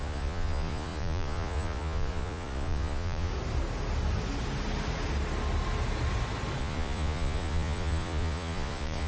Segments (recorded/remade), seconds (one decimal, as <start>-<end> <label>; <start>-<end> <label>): 0.0-3.3 remade; 3.3-6.6 recorded; 6.6-9.1 remade